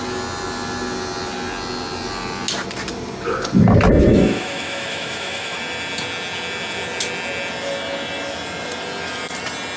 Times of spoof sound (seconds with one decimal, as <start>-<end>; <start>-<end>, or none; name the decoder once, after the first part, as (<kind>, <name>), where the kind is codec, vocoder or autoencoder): 4.1-5.6 (autoencoder, DAC-VAE)